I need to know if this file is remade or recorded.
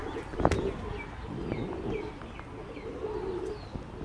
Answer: recorded